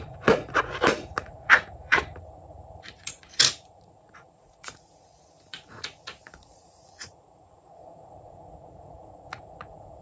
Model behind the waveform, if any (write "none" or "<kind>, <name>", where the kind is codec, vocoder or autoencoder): vocoder, Vocos